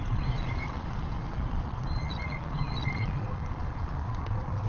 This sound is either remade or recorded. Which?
remade